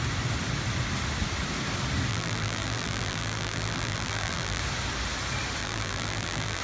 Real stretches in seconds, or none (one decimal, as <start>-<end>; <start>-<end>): 0.0-2.1; 4.6-5.6